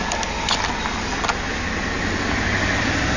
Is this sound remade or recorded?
recorded